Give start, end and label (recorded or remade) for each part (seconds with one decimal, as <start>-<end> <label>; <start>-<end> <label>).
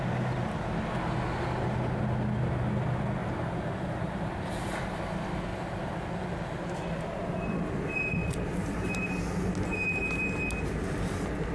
0.0-3.2 recorded; 3.2-4.3 remade; 4.3-5.5 recorded; 5.5-6.6 remade; 6.6-8.2 recorded; 8.2-9.5 remade; 9.5-11.5 recorded